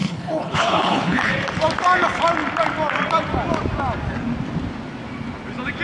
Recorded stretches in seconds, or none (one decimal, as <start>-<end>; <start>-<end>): 1.3-5.8